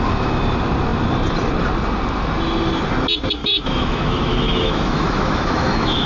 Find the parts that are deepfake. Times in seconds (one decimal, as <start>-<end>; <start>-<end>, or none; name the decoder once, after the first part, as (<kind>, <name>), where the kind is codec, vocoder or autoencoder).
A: 3.4-6.1 (autoencoder, DAC-VAE)